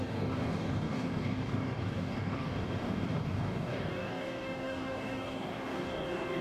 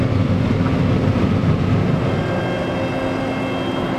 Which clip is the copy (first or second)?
first